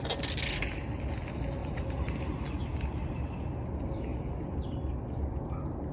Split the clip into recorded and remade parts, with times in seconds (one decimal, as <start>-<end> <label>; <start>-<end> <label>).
0.0-1.6 recorded; 1.6-2.3 remade; 2.3-5.9 recorded